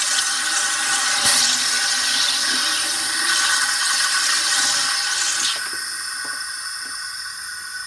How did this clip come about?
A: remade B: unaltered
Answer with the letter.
B